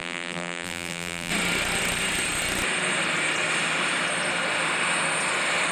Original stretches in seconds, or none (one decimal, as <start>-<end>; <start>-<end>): 1.3-5.7